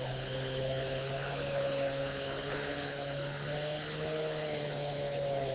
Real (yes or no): no